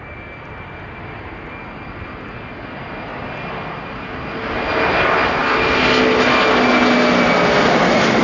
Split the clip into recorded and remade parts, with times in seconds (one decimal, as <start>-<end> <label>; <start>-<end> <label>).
0.0-8.2 recorded